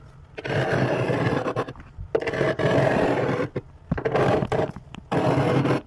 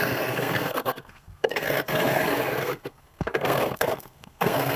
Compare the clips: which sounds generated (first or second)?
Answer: second